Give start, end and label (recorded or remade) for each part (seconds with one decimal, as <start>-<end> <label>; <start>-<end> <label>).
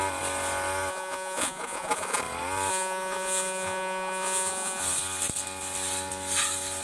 0.0-0.9 recorded; 0.9-2.2 remade; 2.2-2.7 recorded; 2.7-4.8 remade; 4.8-6.8 recorded